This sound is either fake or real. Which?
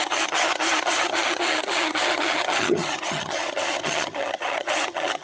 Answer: fake